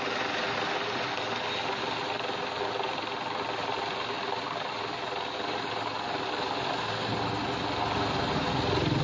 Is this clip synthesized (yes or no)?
no